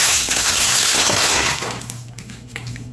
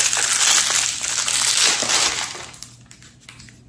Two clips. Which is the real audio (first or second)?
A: second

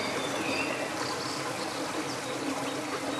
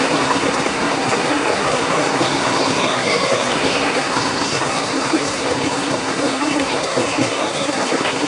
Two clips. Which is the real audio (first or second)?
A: first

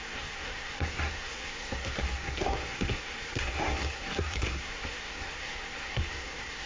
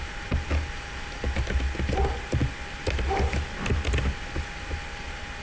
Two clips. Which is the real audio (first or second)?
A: second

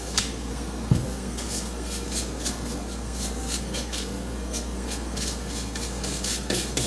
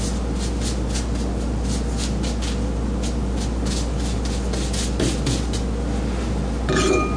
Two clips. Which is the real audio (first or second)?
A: second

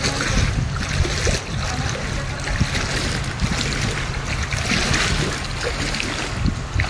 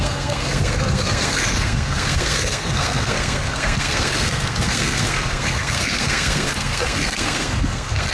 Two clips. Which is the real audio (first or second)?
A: first